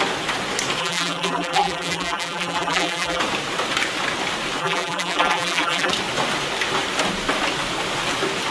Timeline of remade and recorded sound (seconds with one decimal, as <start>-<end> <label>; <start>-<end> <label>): 0.0-0.8 recorded; 0.8-3.2 remade; 3.2-4.6 recorded; 4.6-5.9 remade; 5.9-8.5 recorded